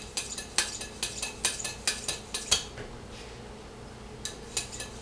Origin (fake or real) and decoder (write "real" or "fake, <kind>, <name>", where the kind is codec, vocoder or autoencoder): real